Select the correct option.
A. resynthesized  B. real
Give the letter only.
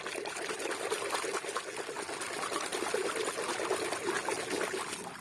B